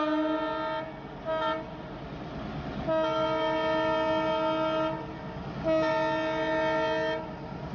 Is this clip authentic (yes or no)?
yes